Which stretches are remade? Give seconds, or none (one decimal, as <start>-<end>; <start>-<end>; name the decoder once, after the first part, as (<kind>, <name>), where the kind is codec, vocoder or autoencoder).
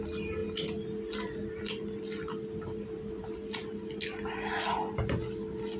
none